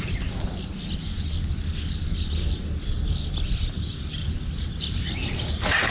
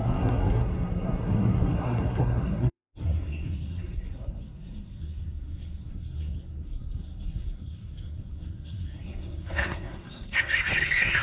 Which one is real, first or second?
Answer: first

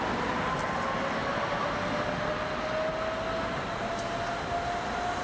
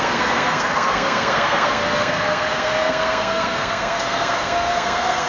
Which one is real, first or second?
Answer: first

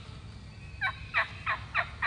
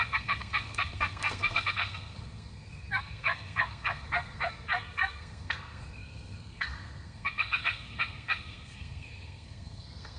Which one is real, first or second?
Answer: first